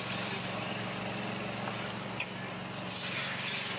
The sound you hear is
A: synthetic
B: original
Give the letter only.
B